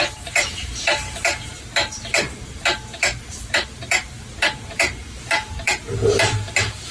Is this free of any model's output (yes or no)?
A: no